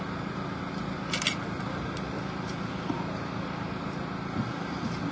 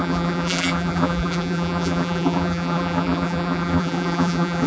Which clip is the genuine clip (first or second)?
first